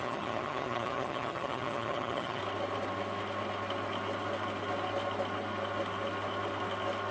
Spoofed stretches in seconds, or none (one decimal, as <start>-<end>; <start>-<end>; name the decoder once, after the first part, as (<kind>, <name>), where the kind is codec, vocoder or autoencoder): 0.0-2.4 (vocoder, HiFi-GAN)